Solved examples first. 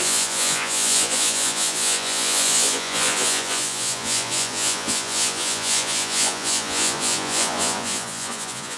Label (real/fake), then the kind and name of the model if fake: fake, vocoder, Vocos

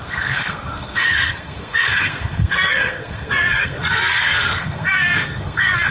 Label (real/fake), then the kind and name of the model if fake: fake, codec, SNAC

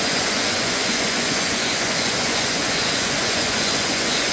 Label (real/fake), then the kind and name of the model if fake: fake, vocoder, Vocos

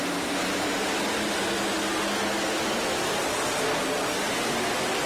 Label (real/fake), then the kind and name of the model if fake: real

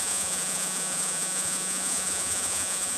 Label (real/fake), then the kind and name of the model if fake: fake, vocoder, Vocos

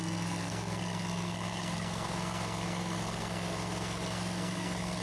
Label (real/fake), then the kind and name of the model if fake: fake, codec, SNAC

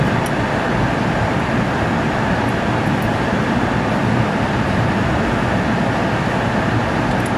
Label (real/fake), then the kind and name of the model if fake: real